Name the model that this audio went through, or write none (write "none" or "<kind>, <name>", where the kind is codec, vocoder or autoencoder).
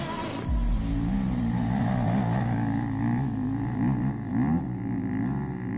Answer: none